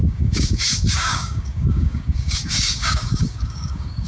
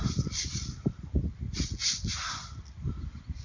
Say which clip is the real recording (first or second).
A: second